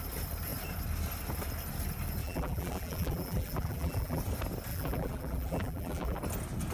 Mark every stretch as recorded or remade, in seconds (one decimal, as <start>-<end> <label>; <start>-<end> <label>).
0.0-2.2 recorded; 2.2-4.2 remade; 4.2-4.7 recorded; 4.7-6.2 remade; 6.2-6.7 recorded